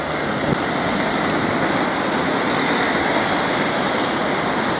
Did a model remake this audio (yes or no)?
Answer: no